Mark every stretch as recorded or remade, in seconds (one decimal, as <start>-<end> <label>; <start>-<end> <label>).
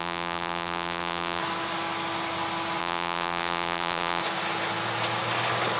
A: 0.0-1.4 remade; 1.4-2.8 recorded; 2.8-4.2 remade; 4.2-5.8 recorded